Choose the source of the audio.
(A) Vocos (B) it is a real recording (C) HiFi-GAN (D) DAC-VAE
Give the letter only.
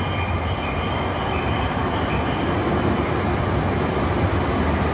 B